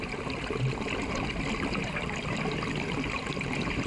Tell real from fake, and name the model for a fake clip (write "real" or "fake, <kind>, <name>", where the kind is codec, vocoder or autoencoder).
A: real